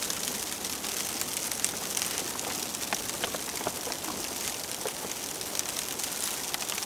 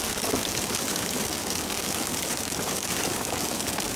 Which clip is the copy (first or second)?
second